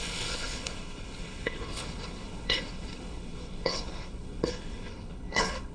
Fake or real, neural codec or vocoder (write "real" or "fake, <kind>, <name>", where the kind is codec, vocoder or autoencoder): fake, codec, HILCodec